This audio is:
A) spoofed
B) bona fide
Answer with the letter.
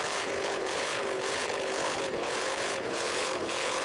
A